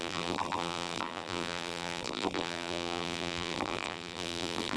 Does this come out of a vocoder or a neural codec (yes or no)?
yes